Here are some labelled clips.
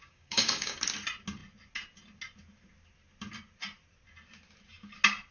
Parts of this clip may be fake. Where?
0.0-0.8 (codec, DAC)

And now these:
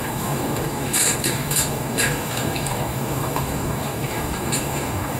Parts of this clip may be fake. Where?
0.0-5.2 (codec, DAC)

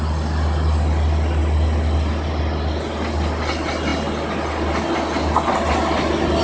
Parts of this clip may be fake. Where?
none